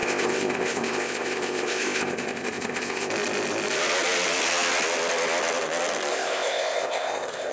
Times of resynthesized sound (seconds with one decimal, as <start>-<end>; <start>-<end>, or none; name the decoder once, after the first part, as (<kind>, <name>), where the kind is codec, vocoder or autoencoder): 0.0-3.1 (codec, ZipCodec); 6.1-7.5